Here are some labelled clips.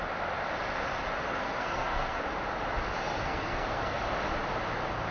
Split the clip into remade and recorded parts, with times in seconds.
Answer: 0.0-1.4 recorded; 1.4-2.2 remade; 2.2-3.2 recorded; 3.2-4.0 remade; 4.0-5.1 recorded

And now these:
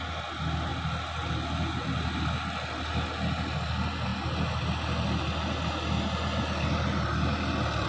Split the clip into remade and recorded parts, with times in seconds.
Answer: 0.0-7.9 recorded

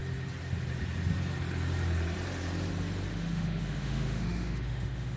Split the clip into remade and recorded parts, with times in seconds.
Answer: 0.0-3.1 recorded; 3.1-5.2 remade

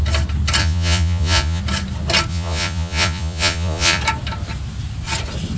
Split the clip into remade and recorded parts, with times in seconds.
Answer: 0.0-0.6 recorded; 0.6-1.6 remade; 1.6-2.3 recorded; 2.3-4.0 remade; 4.0-5.6 recorded

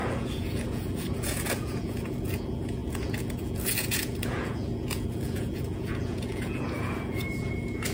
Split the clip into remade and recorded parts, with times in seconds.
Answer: 0.0-7.9 remade

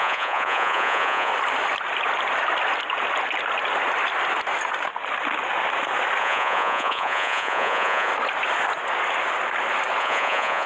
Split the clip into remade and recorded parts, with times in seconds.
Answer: 0.0-1.3 remade; 1.3-6.2 recorded; 6.2-8.1 remade; 8.1-10.0 recorded; 10.0-10.7 remade

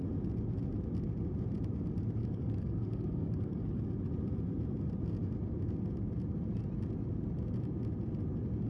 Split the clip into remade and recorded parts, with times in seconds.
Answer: 0.0-2.2 recorded; 2.2-3.8 remade; 3.8-8.7 recorded

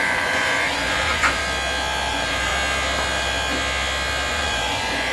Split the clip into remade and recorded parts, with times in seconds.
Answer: 0.0-1.4 remade; 1.4-2.1 recorded; 2.1-2.5 remade; 2.5-4.3 recorded; 4.3-5.1 remade